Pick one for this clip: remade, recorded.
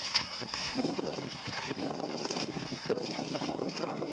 remade